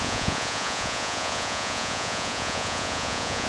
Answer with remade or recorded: remade